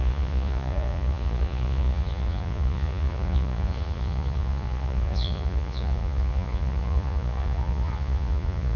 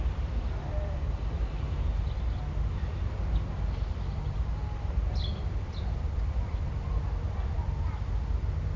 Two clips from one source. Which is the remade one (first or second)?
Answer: first